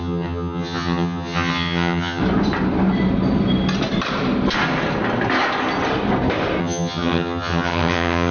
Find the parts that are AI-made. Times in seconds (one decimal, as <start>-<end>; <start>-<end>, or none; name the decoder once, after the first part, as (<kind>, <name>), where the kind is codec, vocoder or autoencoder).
0.0-2.2 (vocoder, HiFi-GAN); 6.6-8.3